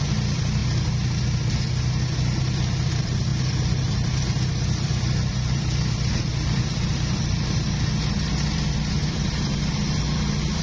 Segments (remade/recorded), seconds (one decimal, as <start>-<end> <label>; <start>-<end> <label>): 0.0-0.6 remade; 0.6-2.4 recorded; 2.4-10.6 remade